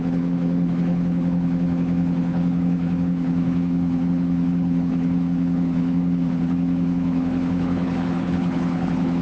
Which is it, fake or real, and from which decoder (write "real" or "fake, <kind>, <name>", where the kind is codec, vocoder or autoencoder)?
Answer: fake, codec, HILCodec